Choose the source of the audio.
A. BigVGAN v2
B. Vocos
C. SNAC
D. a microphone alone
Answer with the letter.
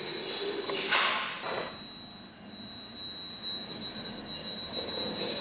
D